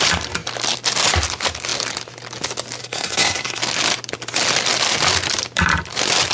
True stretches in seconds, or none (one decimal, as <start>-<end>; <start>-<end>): 0.0-2.8; 3.6-6.3